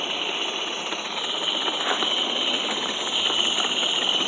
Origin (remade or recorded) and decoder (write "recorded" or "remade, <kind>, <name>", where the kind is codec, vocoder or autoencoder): recorded